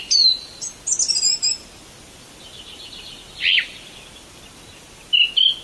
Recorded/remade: recorded